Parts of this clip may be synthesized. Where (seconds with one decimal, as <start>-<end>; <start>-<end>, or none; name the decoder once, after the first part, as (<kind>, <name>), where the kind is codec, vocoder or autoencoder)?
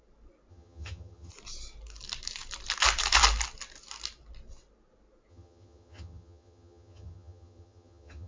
0.5-1.3 (vocoder, HiFi-GAN); 5.3-8.3